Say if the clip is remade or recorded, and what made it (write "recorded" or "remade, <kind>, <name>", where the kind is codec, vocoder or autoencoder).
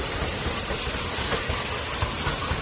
recorded